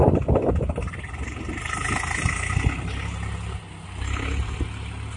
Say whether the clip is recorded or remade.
recorded